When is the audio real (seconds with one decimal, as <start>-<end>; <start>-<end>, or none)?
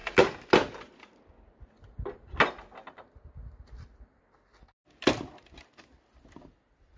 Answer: 0.0-7.0